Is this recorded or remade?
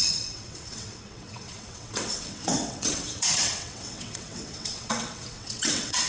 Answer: remade